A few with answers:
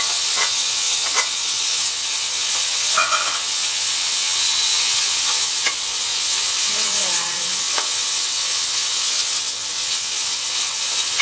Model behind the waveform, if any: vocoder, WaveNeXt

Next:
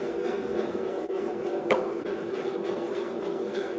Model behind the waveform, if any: codec, SNAC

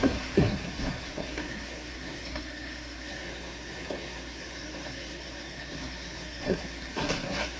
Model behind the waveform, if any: codec, SNAC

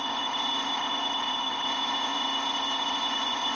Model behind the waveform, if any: codec, ZipCodec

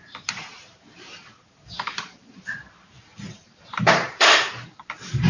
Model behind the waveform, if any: vocoder, BigVGAN v2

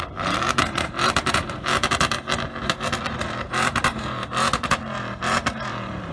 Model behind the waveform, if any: vocoder, BigVGAN v2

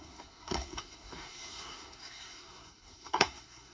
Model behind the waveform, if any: codec, SNAC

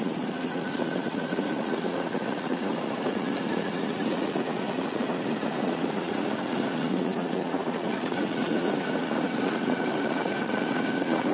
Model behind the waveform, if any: vocoder, Vocos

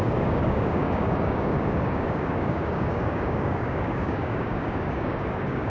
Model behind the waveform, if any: codec, DAC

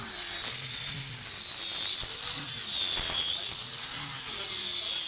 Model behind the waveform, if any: none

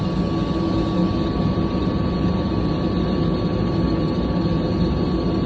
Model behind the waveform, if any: none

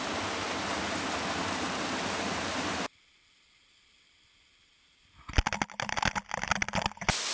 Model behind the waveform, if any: none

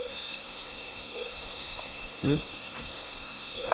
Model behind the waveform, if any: codec, SNAC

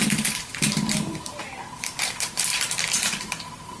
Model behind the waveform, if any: vocoder, BigVGAN v2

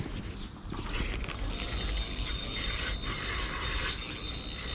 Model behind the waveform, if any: none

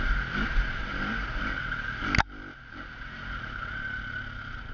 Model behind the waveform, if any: none